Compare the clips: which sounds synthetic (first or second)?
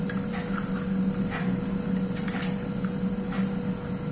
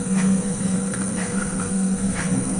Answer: second